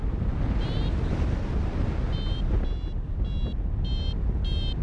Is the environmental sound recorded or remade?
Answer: recorded